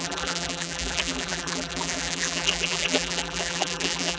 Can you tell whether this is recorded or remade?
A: remade